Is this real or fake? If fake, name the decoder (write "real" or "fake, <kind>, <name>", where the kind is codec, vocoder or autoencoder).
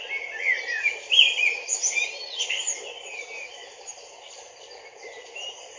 real